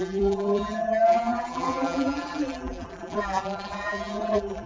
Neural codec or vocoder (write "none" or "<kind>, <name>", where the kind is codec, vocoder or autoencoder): vocoder, BigVGAN v2